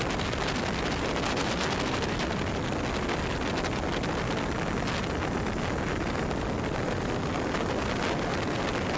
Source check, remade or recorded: recorded